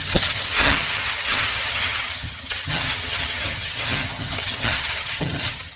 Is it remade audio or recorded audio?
remade